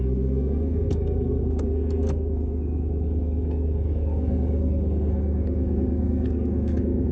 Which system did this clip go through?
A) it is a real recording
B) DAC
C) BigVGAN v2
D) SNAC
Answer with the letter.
D